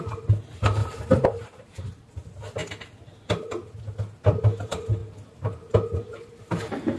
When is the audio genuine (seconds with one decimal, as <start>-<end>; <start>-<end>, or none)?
0.0-0.8; 2.1-7.0